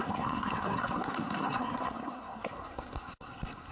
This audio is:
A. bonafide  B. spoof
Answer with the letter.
B